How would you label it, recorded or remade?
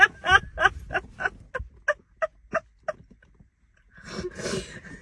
recorded